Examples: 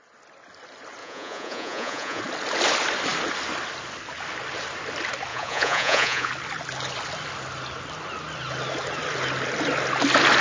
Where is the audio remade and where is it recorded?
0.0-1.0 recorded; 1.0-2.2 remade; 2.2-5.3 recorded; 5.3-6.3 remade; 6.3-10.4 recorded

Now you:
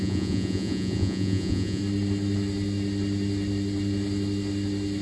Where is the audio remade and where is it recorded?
0.0-1.8 remade; 1.8-5.0 recorded

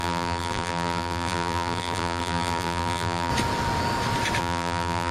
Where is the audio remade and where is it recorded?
0.0-3.3 remade; 3.3-4.4 recorded; 4.4-5.1 remade

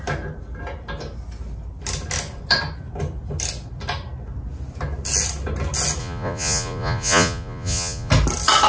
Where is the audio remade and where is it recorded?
0.0-6.0 recorded; 6.0-8.1 remade; 8.1-8.7 recorded

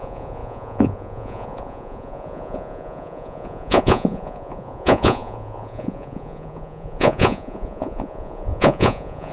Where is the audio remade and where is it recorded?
0.0-9.3 remade